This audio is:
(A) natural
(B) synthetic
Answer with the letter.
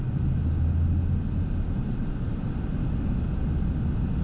A